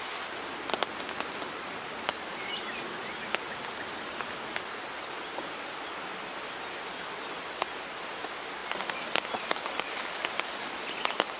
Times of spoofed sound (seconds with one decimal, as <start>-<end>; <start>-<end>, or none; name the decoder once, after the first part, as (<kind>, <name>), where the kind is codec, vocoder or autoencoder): none